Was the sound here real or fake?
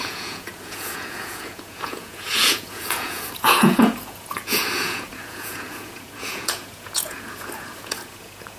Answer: fake